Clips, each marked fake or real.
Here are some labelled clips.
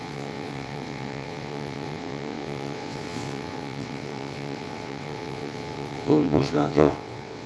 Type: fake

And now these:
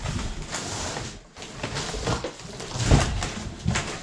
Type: real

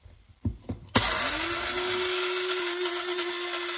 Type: real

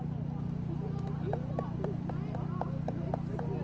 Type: real